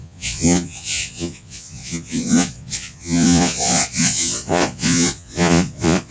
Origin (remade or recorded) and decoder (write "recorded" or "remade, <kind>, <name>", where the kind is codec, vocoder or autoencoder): remade, vocoder, Vocos